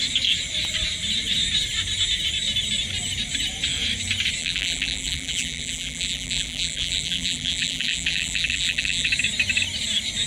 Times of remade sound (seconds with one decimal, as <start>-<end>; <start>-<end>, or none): 4.4-9.1